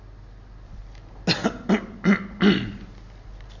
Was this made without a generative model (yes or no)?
yes